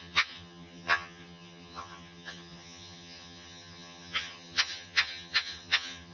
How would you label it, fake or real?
fake